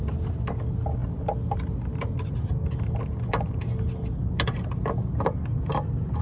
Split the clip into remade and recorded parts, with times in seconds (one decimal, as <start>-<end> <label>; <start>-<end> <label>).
0.0-6.2 recorded